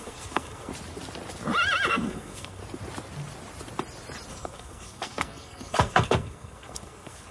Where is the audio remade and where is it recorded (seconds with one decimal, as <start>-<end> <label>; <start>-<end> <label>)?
0.0-0.7 remade; 0.7-1.9 recorded; 1.9-2.6 remade; 2.6-4.3 recorded; 4.3-7.3 remade